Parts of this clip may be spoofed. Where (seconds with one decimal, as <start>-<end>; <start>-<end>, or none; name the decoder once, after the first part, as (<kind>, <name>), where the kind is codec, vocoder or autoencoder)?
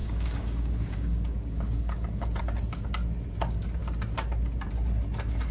0.0-2.4 (codec, DAC)